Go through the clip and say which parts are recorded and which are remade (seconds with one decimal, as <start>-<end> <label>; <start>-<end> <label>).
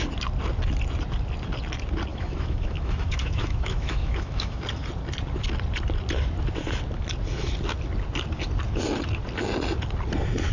0.0-2.1 recorded; 2.1-4.6 remade; 4.6-10.5 recorded